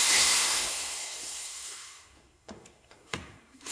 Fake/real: fake